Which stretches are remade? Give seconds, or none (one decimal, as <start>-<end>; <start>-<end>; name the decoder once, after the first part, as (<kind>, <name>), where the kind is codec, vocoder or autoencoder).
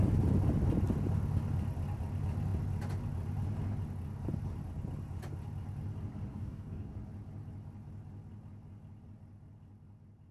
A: 6.3-6.9 (codec, DAC)